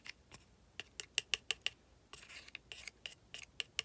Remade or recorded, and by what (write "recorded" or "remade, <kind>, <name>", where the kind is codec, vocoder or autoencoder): recorded